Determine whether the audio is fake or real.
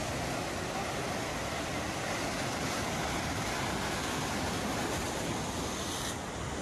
real